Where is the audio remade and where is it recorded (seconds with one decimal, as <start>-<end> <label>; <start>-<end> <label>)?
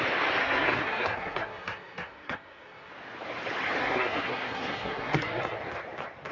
0.0-0.4 recorded; 0.4-2.9 remade; 2.9-3.8 recorded; 3.8-5.6 remade; 5.6-6.3 recorded